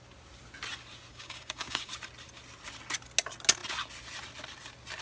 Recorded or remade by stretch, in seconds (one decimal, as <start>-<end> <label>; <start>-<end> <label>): 0.0-1.1 recorded; 1.1-1.9 remade; 1.9-5.0 recorded